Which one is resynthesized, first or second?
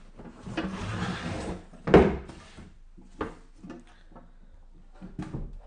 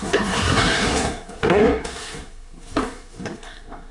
second